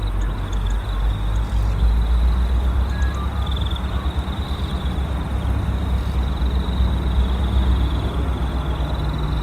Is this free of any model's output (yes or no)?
yes